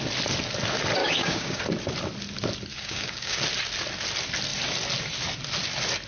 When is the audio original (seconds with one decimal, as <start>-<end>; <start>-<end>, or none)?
0.0-1.0; 1.6-2.7; 3.4-6.1